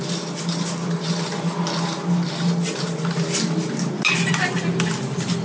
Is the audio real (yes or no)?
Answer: yes